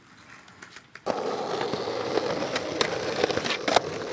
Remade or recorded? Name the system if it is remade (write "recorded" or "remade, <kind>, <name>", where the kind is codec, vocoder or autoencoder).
recorded